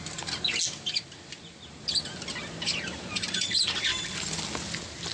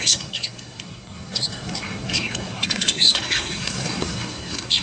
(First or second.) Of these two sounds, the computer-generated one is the second